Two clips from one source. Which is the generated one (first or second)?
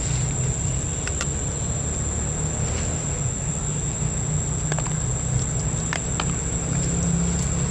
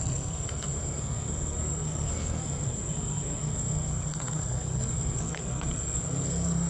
second